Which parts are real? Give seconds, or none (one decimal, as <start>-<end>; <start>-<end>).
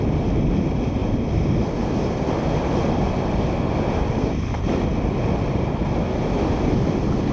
0.0-7.3